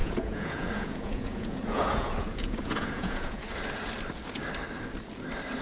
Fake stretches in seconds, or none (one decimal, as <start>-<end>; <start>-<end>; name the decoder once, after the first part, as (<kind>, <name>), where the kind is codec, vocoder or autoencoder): 0.0-3.4 (vocoder, Vocos)